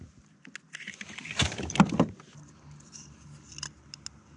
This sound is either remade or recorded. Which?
recorded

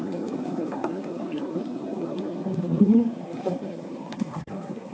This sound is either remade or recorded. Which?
remade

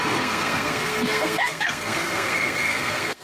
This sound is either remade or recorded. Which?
remade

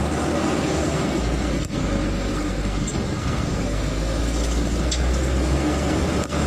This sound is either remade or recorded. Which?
remade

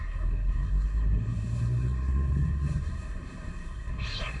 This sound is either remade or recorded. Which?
remade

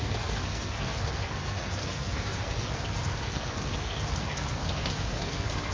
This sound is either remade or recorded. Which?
remade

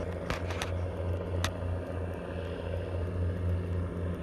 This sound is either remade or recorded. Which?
recorded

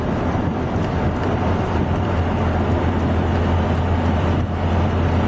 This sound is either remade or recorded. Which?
recorded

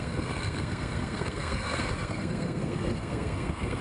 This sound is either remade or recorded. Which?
remade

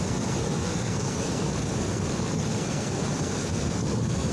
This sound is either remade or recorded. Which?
remade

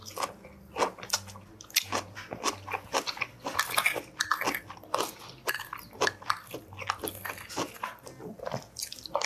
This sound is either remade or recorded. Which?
recorded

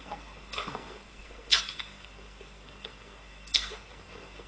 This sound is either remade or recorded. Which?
remade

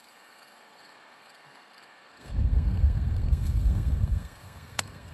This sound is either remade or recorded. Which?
remade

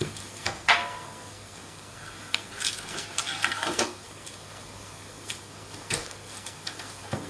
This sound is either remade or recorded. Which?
remade